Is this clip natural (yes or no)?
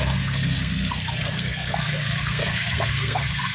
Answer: no